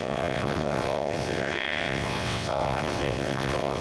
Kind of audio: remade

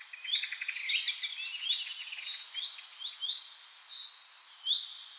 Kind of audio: recorded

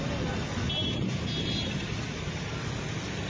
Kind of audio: recorded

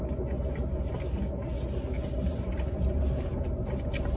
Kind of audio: recorded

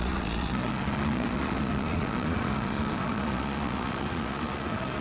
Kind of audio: remade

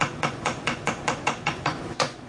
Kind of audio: remade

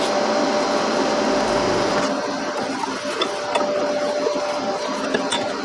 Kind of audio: recorded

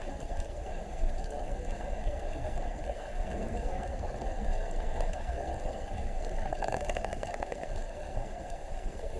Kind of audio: remade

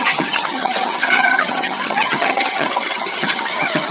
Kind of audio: remade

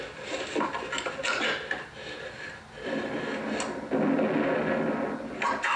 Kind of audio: recorded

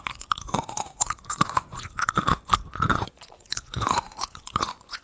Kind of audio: remade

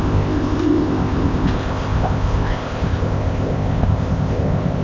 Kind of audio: remade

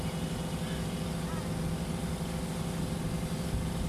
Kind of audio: recorded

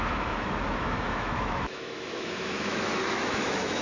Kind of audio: remade